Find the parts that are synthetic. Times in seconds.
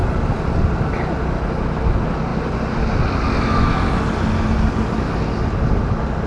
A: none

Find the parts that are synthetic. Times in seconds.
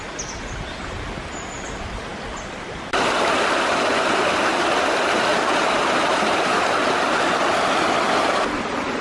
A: 5.3-6.6 (vocoder, BigVGAN v2)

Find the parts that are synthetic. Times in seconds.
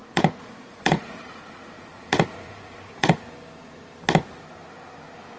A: 0.0-3.2 (vocoder, Vocos)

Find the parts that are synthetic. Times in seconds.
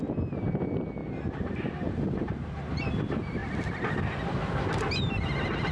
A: 1.0-2.2 (vocoder, BigVGAN v2)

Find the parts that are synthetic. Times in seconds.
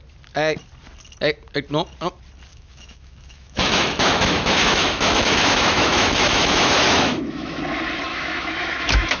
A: 2.5-7.6 (autoencoder, DAC-VAE); 8.1-9.2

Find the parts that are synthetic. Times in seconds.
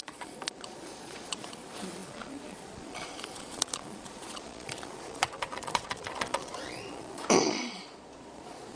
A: 0.0-8.7 (vocoder, Vocos)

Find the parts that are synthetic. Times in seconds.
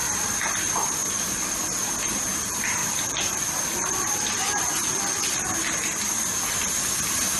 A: 0.0-0.6 (vocoder, BigVGAN v2); 1.0-1.8; 2.8-5.4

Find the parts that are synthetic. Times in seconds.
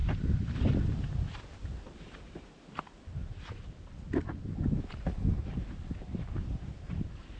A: none